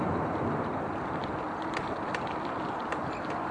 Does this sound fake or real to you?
real